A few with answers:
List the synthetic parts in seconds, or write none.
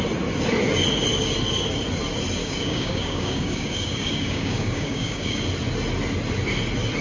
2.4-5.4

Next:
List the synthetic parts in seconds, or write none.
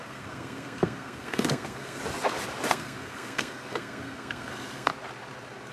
0.0-2.0; 2.7-4.9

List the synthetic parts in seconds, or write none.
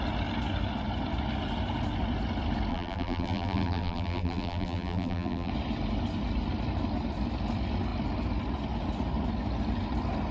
2.7-5.5